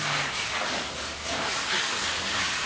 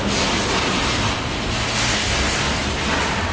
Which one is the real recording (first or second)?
second